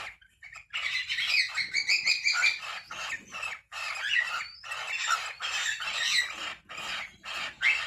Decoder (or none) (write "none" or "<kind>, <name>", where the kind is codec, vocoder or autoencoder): none